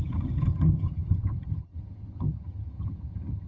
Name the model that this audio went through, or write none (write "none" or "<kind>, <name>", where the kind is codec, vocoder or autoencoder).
vocoder, HiFi-GAN